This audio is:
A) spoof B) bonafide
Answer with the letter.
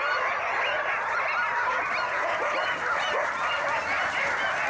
B